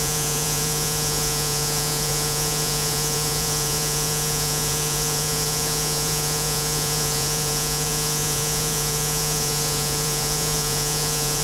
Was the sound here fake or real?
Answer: fake